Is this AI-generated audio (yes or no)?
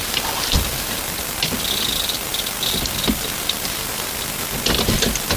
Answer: no